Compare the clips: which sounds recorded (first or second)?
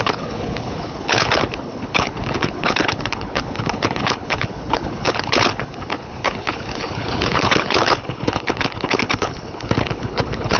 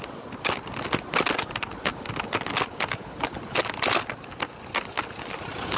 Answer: second